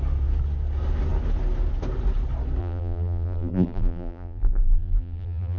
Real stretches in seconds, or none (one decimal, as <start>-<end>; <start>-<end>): 0.0-2.6